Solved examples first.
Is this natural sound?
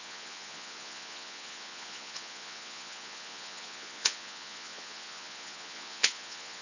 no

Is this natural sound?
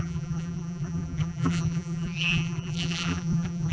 no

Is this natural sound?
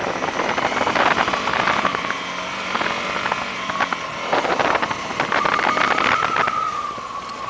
yes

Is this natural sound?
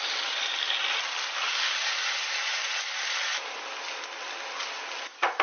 yes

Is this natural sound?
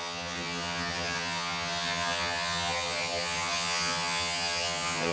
no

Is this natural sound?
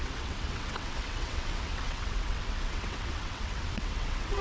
no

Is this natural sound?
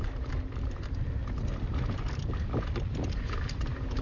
yes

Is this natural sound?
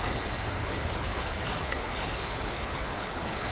no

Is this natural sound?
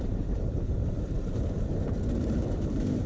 no